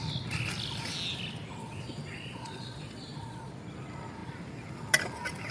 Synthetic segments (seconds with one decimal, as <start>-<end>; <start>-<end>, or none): 1.6-3.5